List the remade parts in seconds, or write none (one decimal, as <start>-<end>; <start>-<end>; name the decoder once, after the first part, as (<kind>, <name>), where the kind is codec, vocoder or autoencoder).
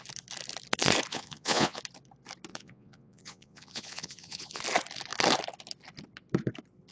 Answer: 1.1-1.8 (vocoder, Vocos); 2.5-4.6